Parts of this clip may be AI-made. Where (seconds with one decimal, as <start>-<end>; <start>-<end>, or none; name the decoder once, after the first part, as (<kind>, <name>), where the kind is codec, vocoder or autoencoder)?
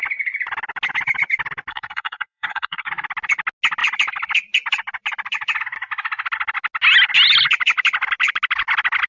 1.7-2.9 (codec, SNAC)